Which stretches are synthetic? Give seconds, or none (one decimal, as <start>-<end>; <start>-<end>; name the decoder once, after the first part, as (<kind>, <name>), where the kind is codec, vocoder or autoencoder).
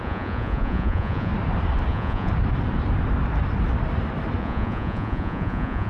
0.0-1.3 (vocoder, Vocos); 1.9-2.3; 4.4-5.9